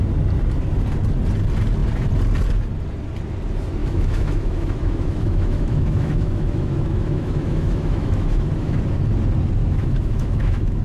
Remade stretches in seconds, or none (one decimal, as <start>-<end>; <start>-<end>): 3.8-8.8; 9.6-10.8